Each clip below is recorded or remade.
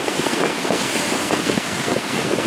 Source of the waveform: remade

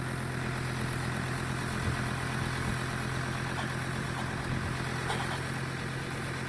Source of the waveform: recorded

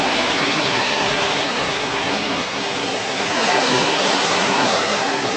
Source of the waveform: remade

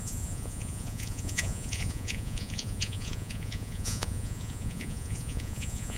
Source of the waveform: remade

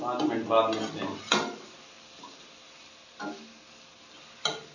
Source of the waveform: recorded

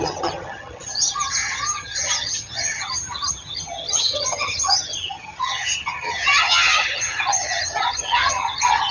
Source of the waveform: remade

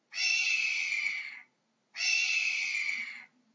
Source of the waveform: recorded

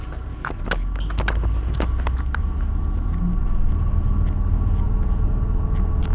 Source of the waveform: recorded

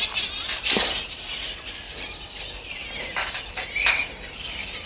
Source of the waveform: recorded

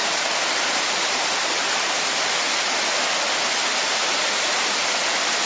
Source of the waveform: recorded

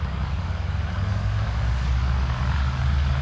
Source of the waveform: remade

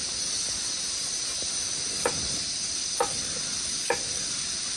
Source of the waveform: recorded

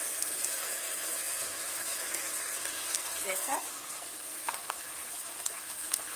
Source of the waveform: remade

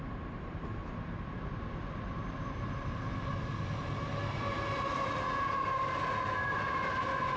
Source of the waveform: recorded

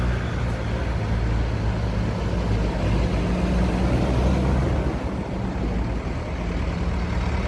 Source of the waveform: recorded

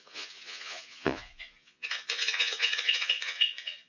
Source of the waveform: remade